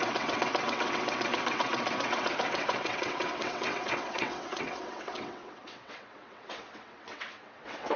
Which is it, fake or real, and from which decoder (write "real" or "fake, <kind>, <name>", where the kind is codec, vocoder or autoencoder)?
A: fake, vocoder, WaveNeXt